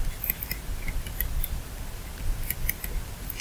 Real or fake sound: real